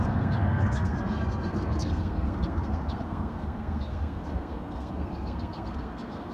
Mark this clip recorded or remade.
remade